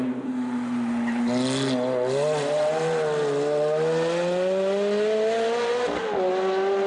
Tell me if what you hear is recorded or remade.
recorded